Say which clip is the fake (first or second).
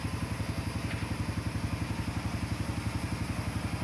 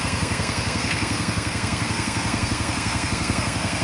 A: second